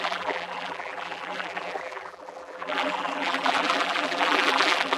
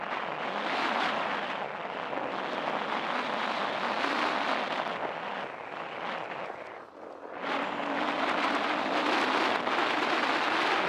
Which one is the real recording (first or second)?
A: second